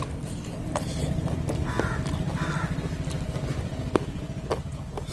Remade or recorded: recorded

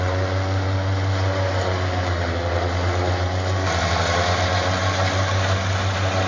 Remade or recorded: recorded